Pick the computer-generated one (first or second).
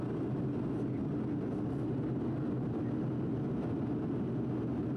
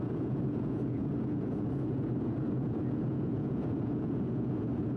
second